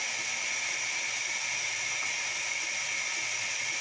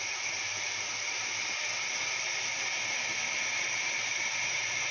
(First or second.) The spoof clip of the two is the second